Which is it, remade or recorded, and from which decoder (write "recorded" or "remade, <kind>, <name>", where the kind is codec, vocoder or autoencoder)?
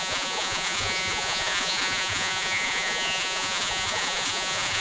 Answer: remade, vocoder, Vocos